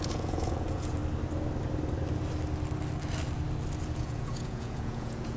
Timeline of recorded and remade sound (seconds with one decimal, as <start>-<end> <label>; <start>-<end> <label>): 0.0-1.0 remade; 1.0-3.8 recorded; 3.8-5.4 remade